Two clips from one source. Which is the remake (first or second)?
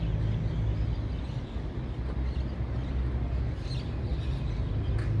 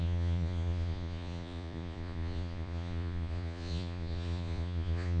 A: second